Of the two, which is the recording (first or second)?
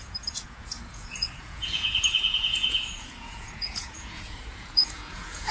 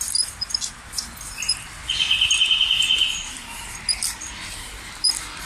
second